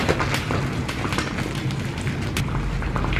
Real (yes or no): yes